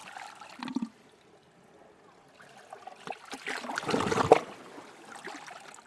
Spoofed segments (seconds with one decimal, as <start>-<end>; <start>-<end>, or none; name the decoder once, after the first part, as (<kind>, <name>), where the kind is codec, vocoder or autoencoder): none